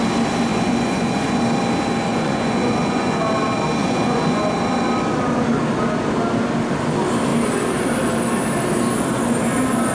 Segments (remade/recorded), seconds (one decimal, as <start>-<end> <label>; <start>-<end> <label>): 0.0-0.5 recorded; 0.5-1.4 remade; 1.4-2.1 recorded; 2.1-3.3 remade; 3.3-3.8 recorded; 3.8-4.4 remade; 4.4-9.9 recorded